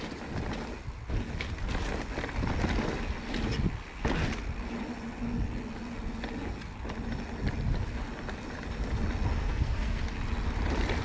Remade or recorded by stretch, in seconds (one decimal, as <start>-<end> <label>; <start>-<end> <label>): 0.0-9.4 recorded; 9.4-10.0 remade; 10.0-11.0 recorded